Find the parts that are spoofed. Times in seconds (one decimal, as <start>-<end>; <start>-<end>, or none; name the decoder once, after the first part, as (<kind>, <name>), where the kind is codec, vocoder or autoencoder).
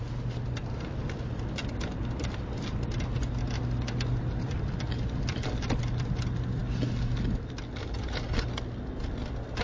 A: none